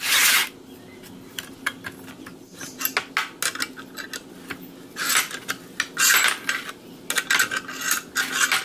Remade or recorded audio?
recorded